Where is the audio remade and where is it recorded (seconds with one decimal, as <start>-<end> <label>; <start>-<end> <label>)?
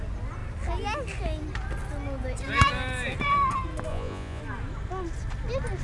0.0-3.9 recorded; 3.9-4.4 remade; 4.4-5.8 recorded